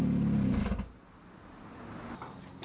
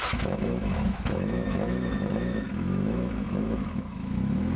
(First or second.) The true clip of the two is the first